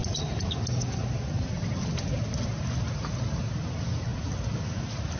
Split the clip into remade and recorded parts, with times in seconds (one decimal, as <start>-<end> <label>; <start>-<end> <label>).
0.0-5.2 recorded